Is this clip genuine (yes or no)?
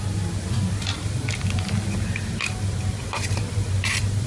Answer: yes